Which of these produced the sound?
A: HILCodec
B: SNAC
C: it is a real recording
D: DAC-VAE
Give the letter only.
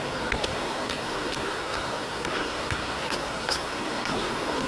B